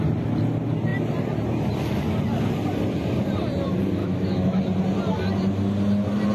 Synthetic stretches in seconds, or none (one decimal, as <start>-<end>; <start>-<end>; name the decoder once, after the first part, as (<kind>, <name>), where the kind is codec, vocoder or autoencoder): 4.0-4.6 (autoencoder, DAC-VAE)